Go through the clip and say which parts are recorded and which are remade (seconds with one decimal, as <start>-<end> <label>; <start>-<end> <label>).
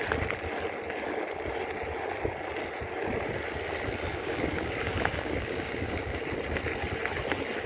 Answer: 0.0-4.1 recorded; 4.1-6.2 remade; 6.2-7.7 recorded